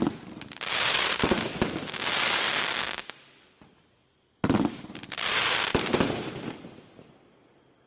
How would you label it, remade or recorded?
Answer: recorded